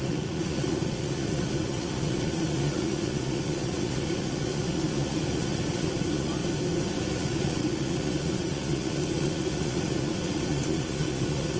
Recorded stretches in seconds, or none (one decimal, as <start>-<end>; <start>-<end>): 6.4-7.0